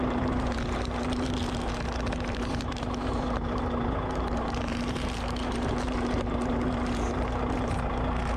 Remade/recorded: remade